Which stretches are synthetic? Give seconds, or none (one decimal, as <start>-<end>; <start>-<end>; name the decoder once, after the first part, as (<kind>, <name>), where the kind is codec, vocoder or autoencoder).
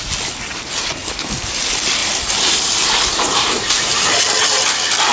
1.0-1.5 (vocoder, BigVGAN v2); 2.0-4.2